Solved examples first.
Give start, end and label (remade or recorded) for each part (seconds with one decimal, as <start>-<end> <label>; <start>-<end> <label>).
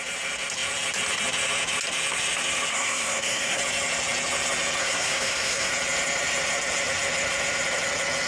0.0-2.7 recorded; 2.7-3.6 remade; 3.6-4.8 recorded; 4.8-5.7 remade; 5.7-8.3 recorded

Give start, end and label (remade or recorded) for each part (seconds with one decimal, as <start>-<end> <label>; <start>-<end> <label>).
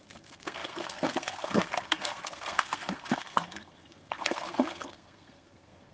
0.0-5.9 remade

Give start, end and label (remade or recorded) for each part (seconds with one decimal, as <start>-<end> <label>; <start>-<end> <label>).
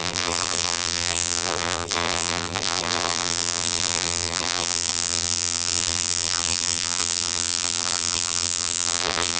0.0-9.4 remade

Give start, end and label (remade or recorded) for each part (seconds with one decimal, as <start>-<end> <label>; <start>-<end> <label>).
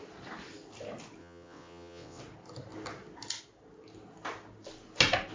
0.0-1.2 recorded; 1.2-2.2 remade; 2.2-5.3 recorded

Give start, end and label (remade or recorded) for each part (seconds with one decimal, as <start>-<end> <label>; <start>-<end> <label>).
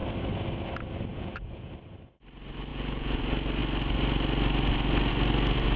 0.0-1.1 recorded; 1.1-1.7 remade; 1.7-2.7 recorded; 2.7-3.2 remade; 3.2-5.8 recorded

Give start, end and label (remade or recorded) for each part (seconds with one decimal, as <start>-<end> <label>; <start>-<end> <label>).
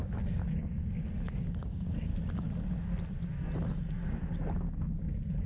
0.0-2.1 remade; 2.1-5.5 recorded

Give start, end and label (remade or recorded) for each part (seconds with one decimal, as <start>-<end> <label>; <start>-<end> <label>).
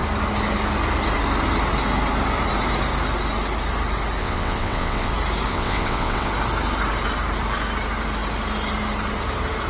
0.0-4.2 recorded; 4.2-5.1 remade; 5.1-5.5 recorded; 5.5-6.3 remade; 6.3-9.7 recorded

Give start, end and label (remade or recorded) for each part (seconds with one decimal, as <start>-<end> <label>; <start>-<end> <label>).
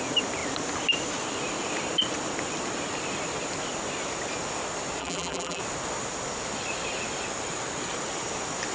0.0-5.0 recorded; 5.0-5.6 remade; 5.6-8.7 recorded